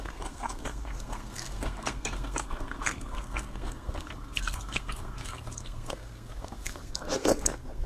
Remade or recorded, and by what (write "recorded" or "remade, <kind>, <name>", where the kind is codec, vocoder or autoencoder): remade, codec, SNAC